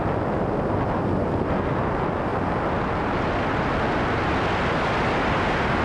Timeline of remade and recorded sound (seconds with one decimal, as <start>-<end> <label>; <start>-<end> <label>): 0.0-5.8 recorded